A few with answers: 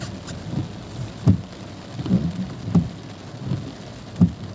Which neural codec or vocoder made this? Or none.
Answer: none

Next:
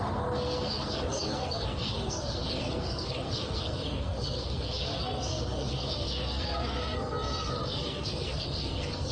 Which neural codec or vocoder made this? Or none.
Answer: codec, SNAC